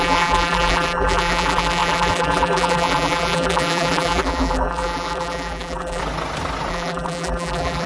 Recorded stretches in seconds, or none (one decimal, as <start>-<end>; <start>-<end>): 6.0-6.7